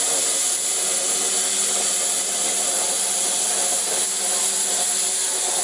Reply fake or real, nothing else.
real